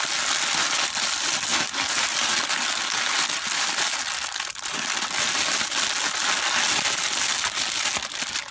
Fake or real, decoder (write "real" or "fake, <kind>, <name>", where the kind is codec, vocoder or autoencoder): real